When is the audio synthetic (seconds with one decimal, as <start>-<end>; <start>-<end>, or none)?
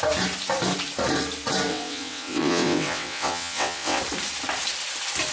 1.7-4.0